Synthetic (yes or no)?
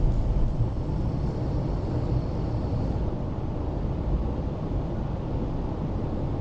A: no